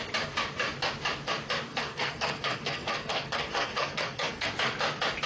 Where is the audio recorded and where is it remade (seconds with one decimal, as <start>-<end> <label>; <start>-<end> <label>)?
0.0-1.7 recorded; 1.7-4.5 remade; 4.5-5.3 recorded